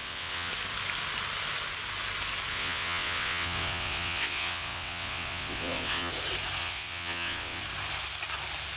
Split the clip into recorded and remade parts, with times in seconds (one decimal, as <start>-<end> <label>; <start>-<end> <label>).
0.0-0.5 remade; 0.5-2.5 recorded; 2.5-6.1 remade; 6.1-6.6 recorded; 6.6-7.6 remade; 7.6-8.8 recorded